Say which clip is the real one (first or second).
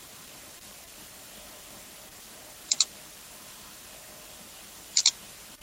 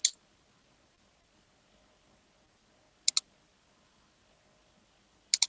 second